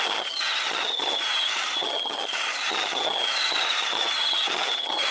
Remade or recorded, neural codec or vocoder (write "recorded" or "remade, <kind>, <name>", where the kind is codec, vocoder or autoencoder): remade, vocoder, HiFi-GAN